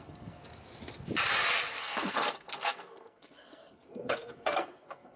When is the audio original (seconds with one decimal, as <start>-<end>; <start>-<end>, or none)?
0.4-1.8